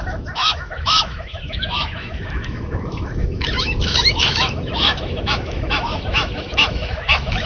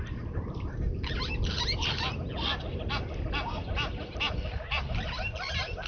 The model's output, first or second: first